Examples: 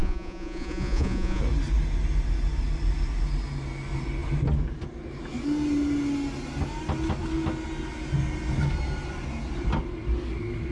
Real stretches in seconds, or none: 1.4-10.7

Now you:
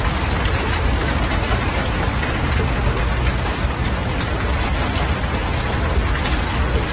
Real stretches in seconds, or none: 0.0-1.0; 2.1-6.9